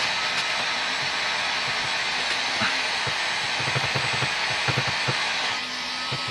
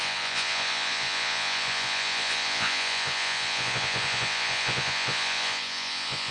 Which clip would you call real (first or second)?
first